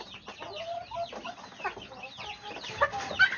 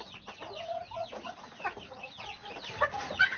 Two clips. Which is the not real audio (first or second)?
second